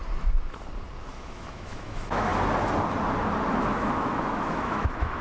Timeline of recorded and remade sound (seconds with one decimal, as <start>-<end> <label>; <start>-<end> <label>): 0.0-1.1 recorded; 1.1-2.3 remade; 2.3-3.6 recorded; 3.6-5.2 remade